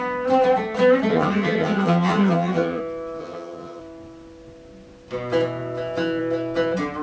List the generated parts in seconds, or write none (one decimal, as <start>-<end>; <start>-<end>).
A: 1.1-2.8; 3.2-3.8